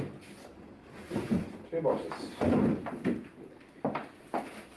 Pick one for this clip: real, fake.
real